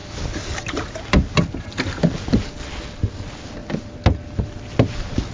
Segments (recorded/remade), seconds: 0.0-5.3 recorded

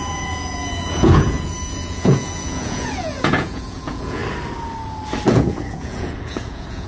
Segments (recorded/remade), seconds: 0.0-4.2 remade; 4.2-5.3 recorded; 5.3-6.9 remade

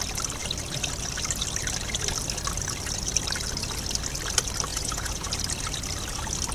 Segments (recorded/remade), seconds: 0.0-4.7 recorded; 4.7-5.3 remade; 5.3-6.5 recorded

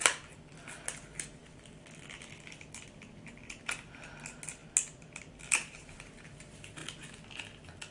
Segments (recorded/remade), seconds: 0.0-7.9 recorded

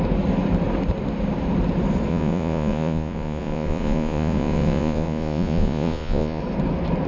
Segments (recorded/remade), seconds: 0.0-2.1 recorded; 2.1-6.4 remade; 6.4-7.1 recorded